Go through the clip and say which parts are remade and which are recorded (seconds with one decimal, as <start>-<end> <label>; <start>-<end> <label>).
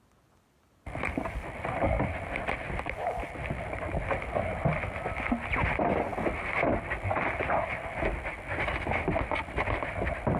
0.0-10.4 recorded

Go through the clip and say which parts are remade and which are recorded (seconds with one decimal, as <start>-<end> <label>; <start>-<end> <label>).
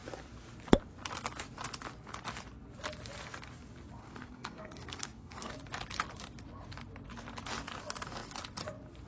0.0-4.0 recorded; 4.0-5.5 remade; 5.5-9.1 recorded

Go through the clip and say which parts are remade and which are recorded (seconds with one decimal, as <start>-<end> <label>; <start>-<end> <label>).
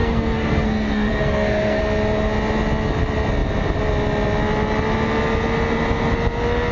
0.0-1.8 remade; 1.8-6.7 recorded